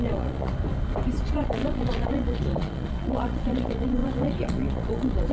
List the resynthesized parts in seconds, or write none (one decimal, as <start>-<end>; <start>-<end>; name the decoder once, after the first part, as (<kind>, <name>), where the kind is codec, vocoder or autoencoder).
0.0-0.5 (vocoder, Vocos); 1.2-5.3